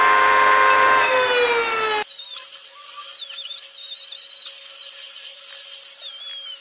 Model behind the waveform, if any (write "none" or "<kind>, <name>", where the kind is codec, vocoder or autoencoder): none